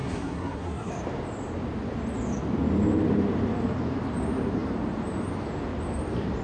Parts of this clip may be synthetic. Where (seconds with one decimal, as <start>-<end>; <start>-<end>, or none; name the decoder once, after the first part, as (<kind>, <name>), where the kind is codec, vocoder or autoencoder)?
0.0-0.9 (codec, SNAC)